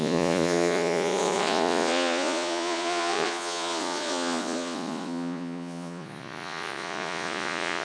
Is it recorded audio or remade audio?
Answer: remade